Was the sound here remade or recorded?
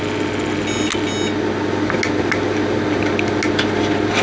recorded